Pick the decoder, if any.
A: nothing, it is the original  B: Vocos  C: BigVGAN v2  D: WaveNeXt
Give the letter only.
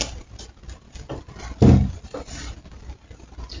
A